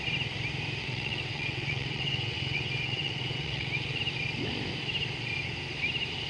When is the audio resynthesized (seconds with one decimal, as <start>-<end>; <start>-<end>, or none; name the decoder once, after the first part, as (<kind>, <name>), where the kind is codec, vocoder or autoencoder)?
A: 0.8-4.0 (vocoder, WaveNeXt)